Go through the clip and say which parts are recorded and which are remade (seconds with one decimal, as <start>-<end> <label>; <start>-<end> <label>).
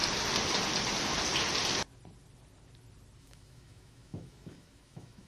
0.0-3.2 recorded; 3.2-5.3 remade